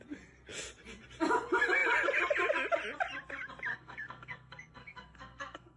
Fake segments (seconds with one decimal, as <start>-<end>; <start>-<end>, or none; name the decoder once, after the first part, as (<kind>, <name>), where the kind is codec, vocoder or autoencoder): 3.7-5.8 (codec, SNAC)